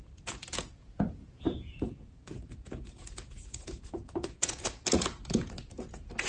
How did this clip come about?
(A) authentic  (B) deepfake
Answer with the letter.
B